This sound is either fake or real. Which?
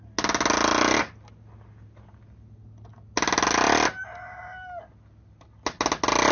real